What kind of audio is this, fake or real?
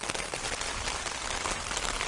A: real